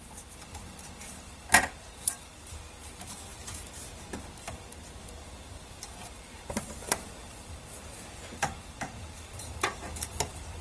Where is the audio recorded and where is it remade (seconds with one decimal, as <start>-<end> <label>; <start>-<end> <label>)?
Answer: 0.0-3.3 remade; 3.3-4.4 recorded; 4.4-10.6 remade